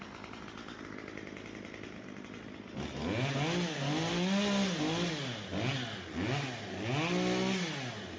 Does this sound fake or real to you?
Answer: real